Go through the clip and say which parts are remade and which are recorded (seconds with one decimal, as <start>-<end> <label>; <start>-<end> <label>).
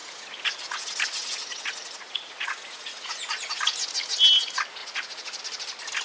0.0-3.6 remade; 3.6-4.8 recorded; 4.8-5.4 remade; 5.4-6.0 recorded